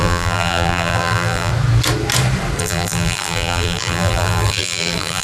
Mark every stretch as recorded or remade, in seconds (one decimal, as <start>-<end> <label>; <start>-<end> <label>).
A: 0.0-1.5 remade; 1.5-2.6 recorded; 2.6-5.2 remade